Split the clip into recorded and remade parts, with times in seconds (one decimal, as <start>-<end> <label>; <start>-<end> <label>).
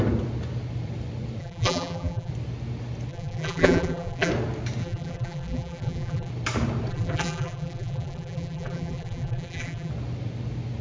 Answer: 0.0-1.4 recorded; 1.4-2.3 remade; 2.3-3.1 recorded; 3.1-4.3 remade; 4.3-4.8 recorded; 4.8-6.3 remade; 6.3-6.9 recorded; 6.9-9.9 remade; 9.9-10.8 recorded